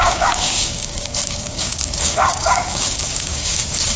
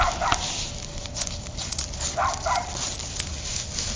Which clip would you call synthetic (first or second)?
first